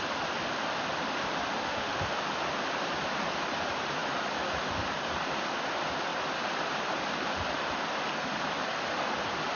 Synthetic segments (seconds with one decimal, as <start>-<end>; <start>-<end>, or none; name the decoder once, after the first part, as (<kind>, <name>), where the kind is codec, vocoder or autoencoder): 1.6-2.2 (autoencoder, DAC-VAE)